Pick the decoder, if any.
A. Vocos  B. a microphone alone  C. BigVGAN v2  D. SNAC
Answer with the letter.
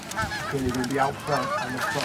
B